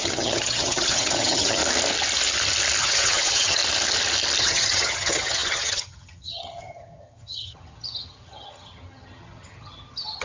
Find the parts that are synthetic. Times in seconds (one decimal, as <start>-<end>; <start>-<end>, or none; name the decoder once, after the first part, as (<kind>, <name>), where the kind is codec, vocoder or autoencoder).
0.0-1.6 (vocoder, HiFi-GAN); 2.8-3.6; 4.4-10.2